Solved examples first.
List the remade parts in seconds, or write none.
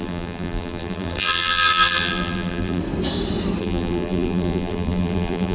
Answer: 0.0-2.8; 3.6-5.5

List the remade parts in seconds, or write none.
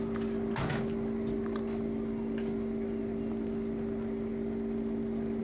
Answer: none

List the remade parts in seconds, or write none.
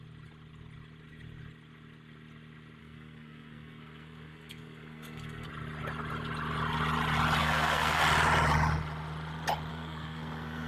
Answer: 2.8-5.5; 7.4-8.0; 9.7-10.7